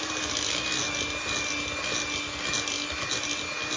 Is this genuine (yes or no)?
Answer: yes